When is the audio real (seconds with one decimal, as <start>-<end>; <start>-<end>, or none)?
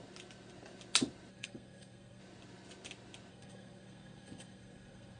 0.0-1.3; 2.2-3.3